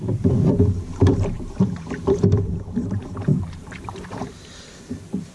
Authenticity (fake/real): fake